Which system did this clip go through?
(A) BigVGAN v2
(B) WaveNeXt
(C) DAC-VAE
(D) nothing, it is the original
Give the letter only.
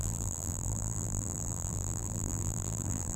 A